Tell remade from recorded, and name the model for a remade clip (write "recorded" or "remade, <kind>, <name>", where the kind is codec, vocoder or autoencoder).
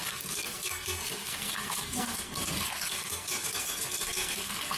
remade, codec, SNAC